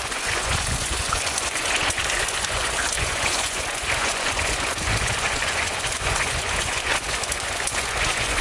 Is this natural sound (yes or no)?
no